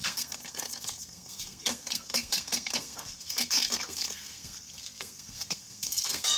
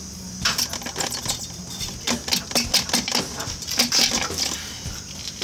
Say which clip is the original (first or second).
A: second